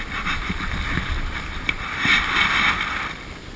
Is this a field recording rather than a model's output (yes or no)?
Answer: yes